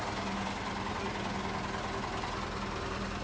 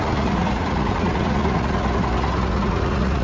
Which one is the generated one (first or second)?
second